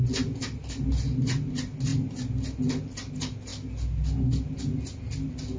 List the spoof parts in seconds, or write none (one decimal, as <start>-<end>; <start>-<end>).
none